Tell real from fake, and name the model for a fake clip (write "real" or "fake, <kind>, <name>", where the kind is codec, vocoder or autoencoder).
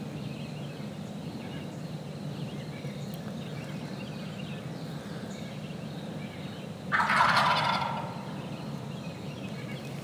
real